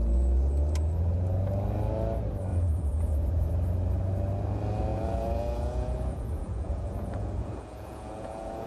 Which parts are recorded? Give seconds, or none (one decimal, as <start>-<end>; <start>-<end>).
0.0-2.5; 3.5-4.9